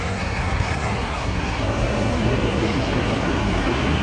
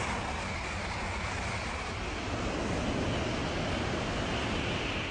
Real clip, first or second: second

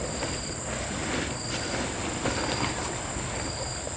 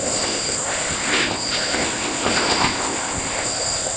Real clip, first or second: first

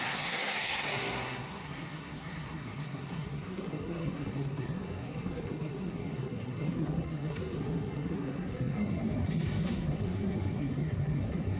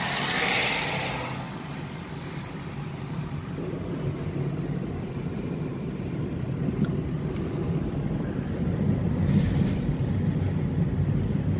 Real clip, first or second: second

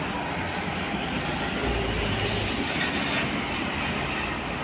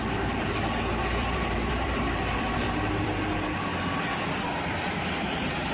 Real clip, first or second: first